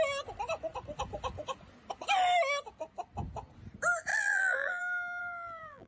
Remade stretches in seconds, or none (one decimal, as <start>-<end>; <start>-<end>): 4.1-4.8; 5.2-5.9